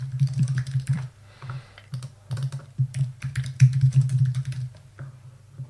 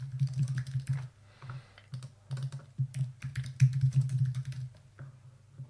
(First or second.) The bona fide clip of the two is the second